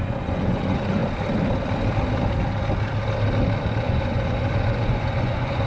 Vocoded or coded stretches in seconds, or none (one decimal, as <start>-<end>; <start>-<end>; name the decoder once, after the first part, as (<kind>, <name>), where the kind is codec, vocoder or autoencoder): 0.0-1.0 (vocoder, Vocos); 3.8-5.7